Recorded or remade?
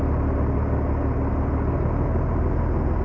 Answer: recorded